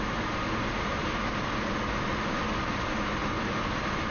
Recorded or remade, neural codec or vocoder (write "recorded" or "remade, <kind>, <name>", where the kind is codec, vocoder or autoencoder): recorded